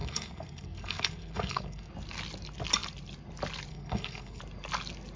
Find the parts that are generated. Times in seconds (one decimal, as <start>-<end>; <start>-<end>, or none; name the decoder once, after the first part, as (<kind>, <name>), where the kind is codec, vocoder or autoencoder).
0.0-1.9 (codec, SNAC); 3.7-4.4